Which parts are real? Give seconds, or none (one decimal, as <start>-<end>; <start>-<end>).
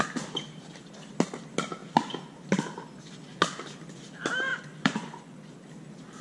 0.0-4.5; 5.5-6.2